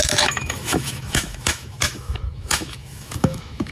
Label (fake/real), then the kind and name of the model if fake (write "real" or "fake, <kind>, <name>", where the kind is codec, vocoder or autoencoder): fake, autoencoder, DAC-VAE